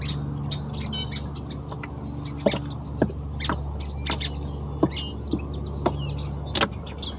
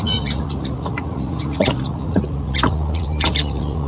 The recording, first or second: first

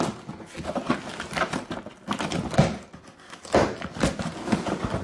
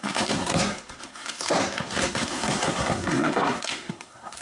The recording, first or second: first